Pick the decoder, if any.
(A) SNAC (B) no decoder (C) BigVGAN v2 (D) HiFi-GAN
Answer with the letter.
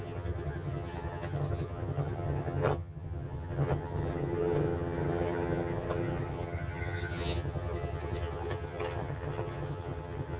D